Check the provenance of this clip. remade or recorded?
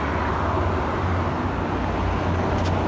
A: recorded